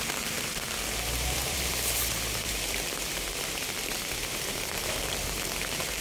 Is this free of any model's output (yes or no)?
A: no